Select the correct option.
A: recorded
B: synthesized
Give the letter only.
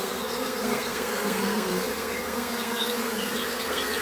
B